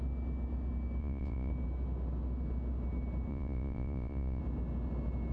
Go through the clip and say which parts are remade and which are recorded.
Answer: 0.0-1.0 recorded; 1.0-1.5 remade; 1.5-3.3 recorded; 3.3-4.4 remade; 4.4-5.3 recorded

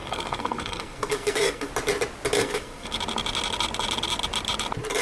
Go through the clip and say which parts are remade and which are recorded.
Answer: 0.0-1.7 remade; 1.7-2.4 recorded; 2.4-3.0 remade; 3.0-5.0 recorded